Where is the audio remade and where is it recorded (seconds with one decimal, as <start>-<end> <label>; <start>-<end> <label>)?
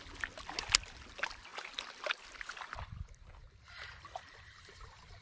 0.0-5.2 recorded